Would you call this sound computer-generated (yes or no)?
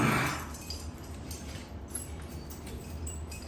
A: no